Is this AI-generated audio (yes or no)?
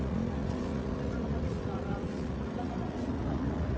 yes